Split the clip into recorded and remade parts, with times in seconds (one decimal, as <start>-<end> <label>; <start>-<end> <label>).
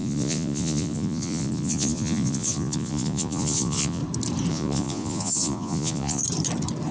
0.0-4.0 remade; 4.0-4.5 recorded; 4.5-6.2 remade; 6.2-6.9 recorded